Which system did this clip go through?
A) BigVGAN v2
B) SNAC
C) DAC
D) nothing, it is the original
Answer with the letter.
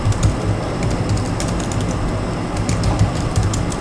D